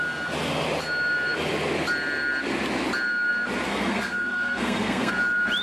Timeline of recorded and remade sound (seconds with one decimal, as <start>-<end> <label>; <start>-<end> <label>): 0.0-3.7 recorded; 3.7-5.1 remade; 5.1-5.6 recorded